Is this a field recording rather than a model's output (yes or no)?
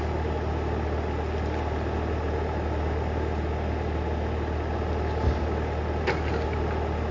yes